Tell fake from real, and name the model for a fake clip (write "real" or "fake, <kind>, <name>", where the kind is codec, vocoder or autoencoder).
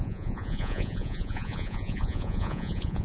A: fake, vocoder, Vocos